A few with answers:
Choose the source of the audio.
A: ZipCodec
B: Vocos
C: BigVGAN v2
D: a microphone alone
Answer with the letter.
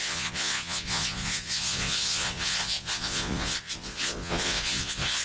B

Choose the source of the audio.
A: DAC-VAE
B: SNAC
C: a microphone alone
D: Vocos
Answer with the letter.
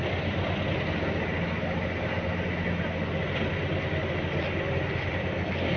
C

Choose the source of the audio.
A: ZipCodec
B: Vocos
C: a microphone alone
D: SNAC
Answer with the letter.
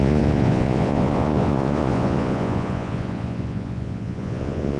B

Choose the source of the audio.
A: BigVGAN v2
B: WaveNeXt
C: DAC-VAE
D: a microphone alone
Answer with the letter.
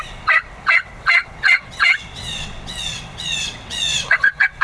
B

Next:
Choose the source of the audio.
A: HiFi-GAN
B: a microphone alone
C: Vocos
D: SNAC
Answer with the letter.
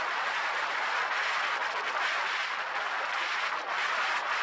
B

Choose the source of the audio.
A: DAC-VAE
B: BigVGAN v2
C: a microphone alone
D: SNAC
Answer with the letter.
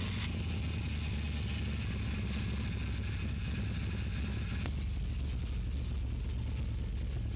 C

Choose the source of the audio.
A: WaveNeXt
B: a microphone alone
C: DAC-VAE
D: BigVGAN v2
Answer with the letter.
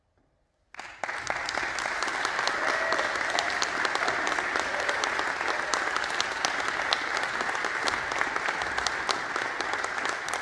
B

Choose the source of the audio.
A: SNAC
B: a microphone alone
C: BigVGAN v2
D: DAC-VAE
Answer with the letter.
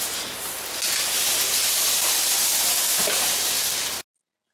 B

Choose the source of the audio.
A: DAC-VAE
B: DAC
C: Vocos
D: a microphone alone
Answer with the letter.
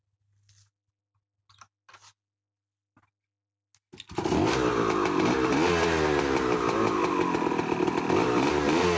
D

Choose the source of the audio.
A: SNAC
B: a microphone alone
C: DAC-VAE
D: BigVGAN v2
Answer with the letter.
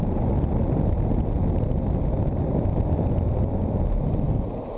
B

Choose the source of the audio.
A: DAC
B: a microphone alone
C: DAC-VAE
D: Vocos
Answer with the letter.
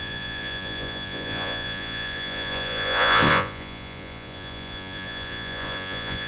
D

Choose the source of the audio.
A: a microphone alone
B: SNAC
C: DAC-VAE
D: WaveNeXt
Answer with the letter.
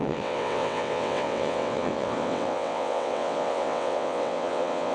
D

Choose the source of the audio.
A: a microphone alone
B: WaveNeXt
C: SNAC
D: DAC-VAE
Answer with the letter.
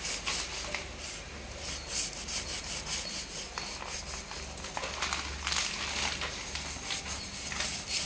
A